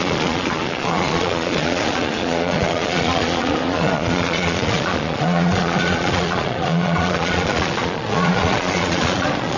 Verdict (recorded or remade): remade